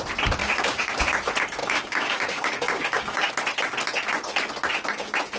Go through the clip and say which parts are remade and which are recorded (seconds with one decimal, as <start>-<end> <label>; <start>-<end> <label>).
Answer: 0.0-0.4 recorded; 0.4-1.0 remade; 1.0-1.6 recorded; 1.6-3.3 remade; 3.3-5.4 recorded